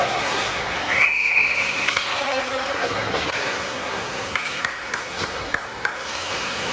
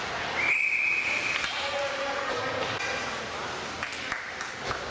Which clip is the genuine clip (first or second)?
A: second